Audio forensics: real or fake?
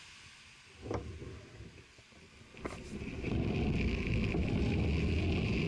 real